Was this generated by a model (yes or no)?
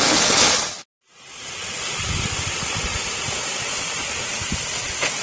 no